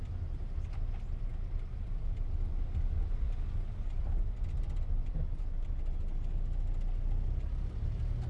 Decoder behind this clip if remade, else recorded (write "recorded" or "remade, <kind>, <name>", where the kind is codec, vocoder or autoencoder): recorded